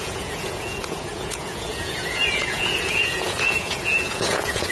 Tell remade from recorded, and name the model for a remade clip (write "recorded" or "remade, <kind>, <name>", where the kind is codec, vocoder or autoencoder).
remade, vocoder, Vocos